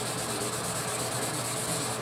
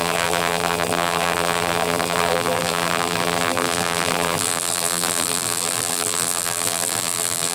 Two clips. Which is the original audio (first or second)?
first